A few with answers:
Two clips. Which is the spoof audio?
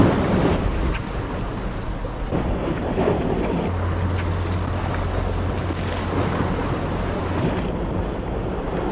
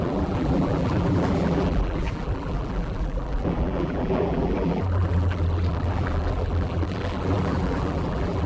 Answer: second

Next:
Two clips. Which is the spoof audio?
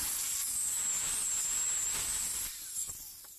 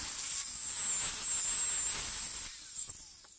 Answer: first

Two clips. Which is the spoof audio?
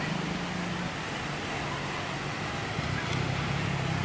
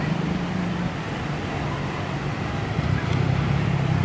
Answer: second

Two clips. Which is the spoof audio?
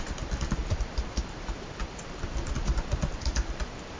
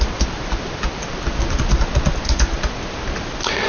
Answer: first